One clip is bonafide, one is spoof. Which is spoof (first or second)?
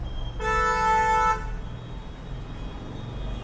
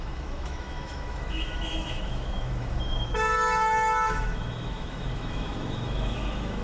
second